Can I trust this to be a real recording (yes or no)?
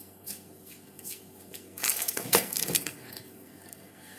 no